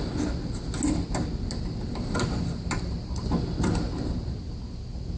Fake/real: real